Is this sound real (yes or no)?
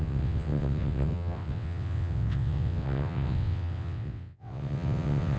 no